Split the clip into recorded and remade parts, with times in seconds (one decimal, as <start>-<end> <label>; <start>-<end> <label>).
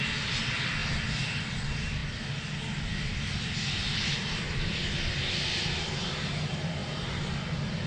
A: 0.0-7.9 recorded